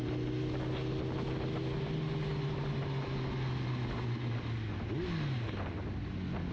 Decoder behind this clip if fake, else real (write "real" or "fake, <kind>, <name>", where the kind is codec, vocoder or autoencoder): real